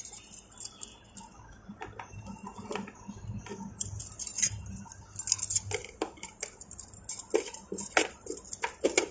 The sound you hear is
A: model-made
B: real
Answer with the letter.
B